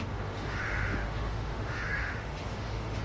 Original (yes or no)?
no